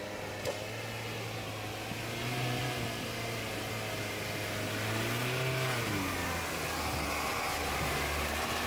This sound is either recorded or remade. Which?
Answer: recorded